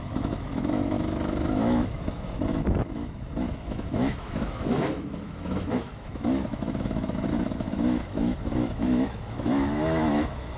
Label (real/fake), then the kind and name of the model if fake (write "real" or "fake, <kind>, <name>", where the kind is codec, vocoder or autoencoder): fake, autoencoder, DAC-VAE